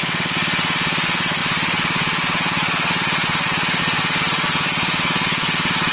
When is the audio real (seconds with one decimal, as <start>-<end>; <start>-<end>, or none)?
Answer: 0.0-5.9